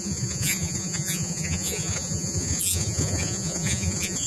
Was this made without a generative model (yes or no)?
no